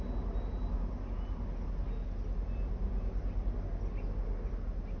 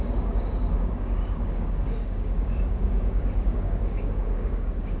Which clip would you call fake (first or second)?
second